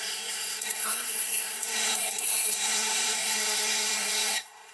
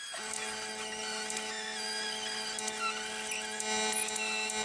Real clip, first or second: second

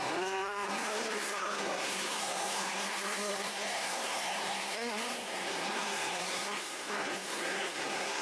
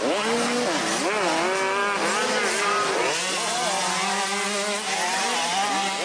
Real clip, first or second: second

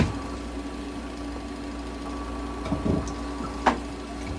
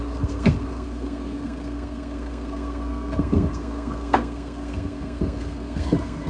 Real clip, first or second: first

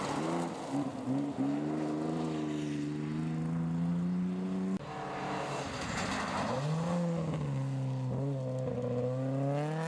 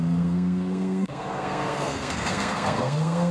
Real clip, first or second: first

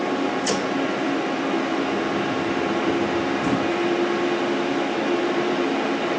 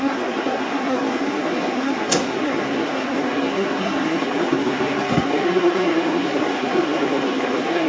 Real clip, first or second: first